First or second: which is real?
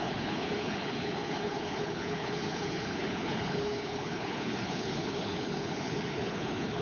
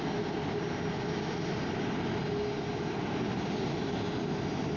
second